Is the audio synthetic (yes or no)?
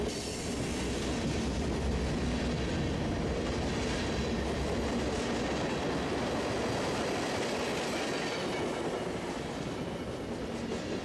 no